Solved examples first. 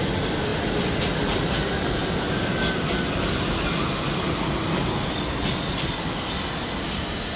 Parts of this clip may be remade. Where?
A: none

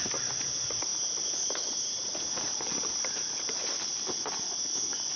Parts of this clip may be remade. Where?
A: none

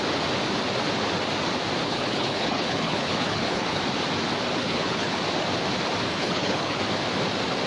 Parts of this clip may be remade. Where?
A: 1.8-3.8; 4.6-5.2; 6.1-6.8